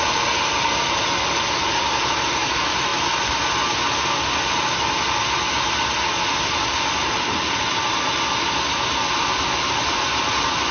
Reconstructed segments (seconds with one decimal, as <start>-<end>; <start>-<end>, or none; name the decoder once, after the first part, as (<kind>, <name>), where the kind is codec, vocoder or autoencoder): none